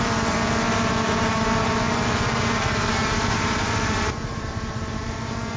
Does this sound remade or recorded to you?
remade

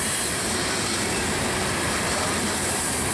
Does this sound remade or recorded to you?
remade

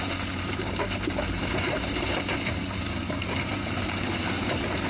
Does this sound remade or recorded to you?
remade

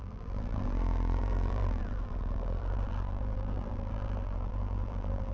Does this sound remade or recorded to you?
remade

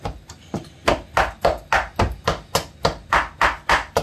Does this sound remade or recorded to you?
recorded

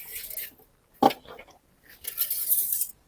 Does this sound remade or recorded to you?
recorded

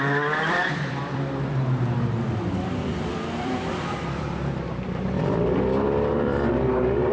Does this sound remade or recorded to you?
remade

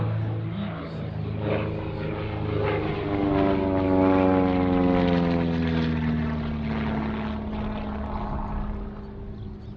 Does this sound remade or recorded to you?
recorded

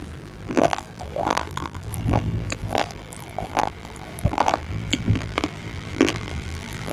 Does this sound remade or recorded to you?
remade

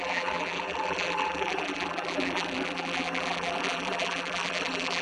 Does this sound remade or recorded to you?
remade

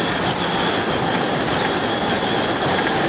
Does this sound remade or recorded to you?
recorded